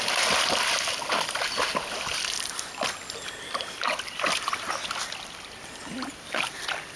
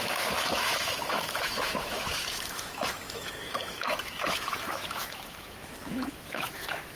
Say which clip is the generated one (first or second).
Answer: second